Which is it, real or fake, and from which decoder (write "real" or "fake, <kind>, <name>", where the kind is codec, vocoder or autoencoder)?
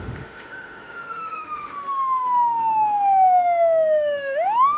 fake, autoencoder, DAC-VAE